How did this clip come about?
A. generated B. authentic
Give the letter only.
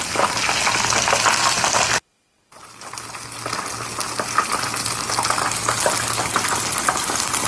B